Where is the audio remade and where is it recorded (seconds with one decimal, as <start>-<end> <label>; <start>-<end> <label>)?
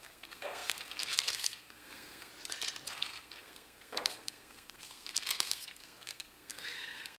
0.0-2.3 remade; 2.3-2.9 recorded; 2.9-7.2 remade